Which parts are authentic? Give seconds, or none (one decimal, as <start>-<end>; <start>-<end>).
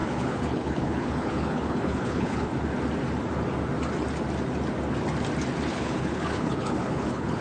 2.5-5.7